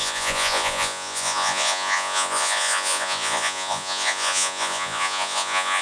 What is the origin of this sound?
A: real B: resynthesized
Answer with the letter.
B